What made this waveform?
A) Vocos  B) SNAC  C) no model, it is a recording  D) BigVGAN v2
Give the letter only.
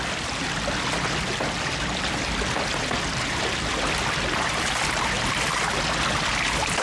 C